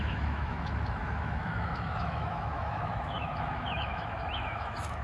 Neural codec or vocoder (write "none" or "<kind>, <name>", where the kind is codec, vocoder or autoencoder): autoencoder, DAC-VAE